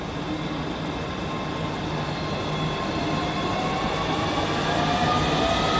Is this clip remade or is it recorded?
recorded